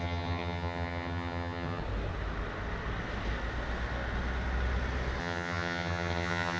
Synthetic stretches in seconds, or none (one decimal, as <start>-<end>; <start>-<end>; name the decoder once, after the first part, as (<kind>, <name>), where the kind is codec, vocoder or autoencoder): 0.0-1.8 (vocoder, HiFi-GAN); 5.2-6.6